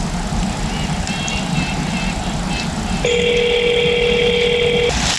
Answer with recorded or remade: recorded